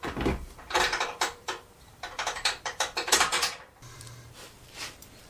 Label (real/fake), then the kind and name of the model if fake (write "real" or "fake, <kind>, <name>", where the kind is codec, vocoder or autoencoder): fake, vocoder, BigVGAN v2